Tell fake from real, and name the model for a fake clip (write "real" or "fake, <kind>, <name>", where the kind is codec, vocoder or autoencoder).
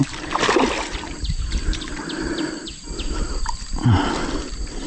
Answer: real